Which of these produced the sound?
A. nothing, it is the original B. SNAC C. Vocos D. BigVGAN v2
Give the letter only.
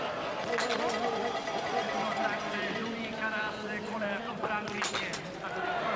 A